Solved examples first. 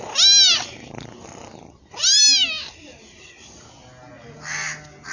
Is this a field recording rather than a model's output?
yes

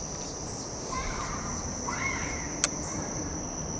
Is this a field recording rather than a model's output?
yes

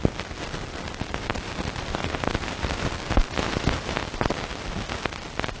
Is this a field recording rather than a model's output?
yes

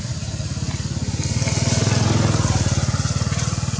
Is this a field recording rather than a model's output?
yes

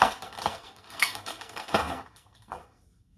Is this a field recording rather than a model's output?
no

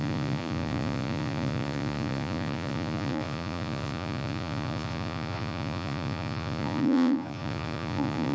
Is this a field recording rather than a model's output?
no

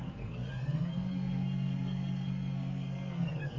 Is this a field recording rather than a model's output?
no